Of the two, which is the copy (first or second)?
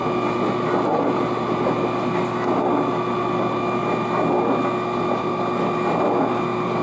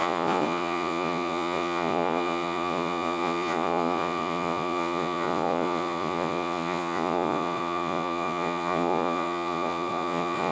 second